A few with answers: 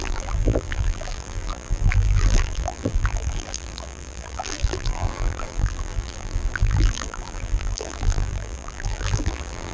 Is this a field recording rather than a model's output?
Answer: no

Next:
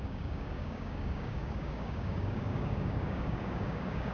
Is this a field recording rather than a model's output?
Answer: no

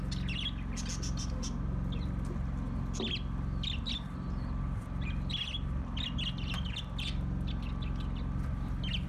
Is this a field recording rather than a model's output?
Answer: yes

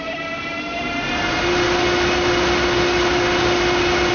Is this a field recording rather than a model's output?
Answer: yes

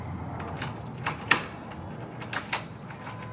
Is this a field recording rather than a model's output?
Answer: yes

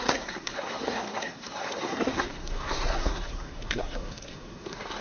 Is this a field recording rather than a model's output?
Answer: no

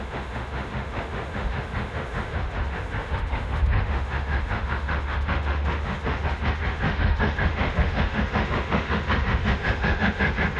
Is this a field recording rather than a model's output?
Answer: no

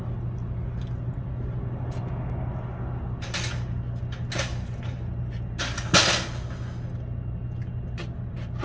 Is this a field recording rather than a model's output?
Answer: yes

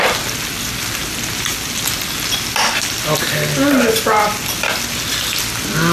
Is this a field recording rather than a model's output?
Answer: yes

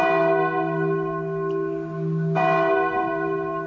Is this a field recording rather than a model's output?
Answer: yes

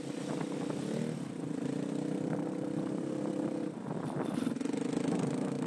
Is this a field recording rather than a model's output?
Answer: yes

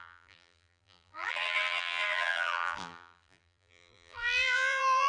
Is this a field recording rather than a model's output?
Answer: no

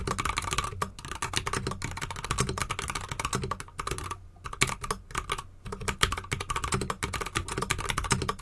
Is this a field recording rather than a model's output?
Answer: yes